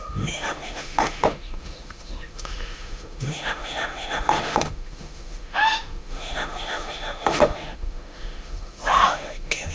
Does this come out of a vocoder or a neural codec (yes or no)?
yes